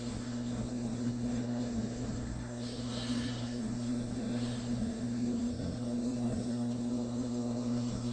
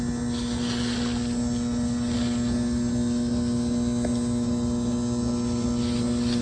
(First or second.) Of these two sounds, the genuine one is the second